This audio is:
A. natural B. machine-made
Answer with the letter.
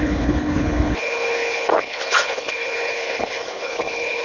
B